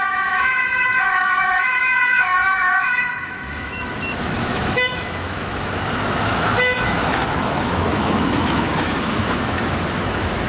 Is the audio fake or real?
fake